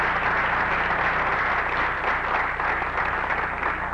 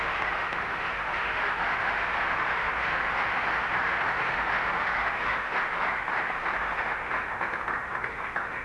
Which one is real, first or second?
first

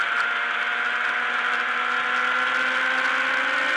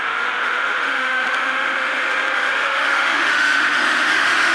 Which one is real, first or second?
first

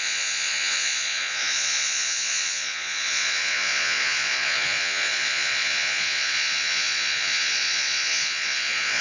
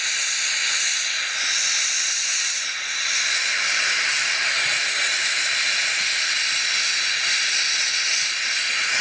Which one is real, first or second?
second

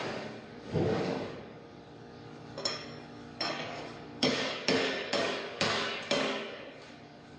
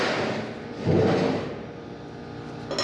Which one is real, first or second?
second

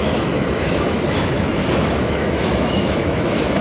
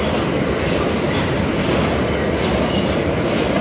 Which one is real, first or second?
second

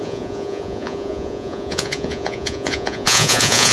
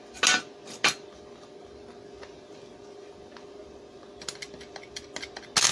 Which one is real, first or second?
second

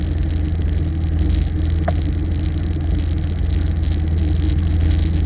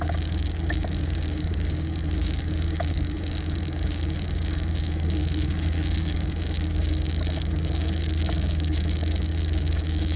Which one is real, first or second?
first